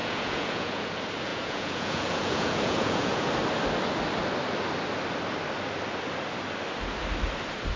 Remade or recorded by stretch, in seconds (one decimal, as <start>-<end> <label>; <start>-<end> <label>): 0.0-0.9 remade; 0.9-1.3 recorded; 1.3-3.3 remade; 3.3-7.8 recorded